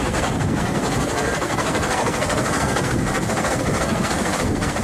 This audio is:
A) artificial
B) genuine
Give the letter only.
A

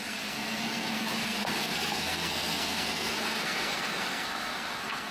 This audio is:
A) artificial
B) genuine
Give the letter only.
A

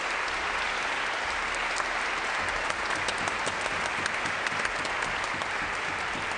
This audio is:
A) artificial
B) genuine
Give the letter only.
B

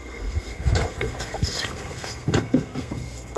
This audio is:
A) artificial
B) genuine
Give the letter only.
A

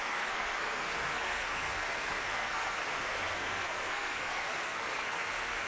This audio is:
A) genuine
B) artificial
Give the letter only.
B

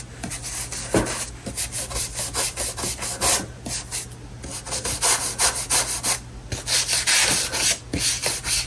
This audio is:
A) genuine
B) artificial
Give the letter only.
A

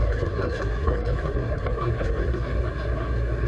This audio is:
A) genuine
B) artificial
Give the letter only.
B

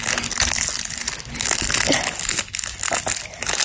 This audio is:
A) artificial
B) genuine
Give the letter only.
B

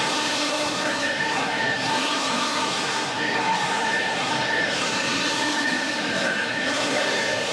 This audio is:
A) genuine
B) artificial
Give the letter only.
B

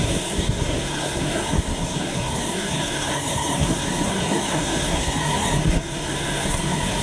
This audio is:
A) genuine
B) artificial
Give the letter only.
B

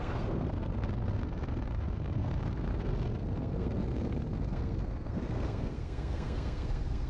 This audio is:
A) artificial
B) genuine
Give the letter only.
A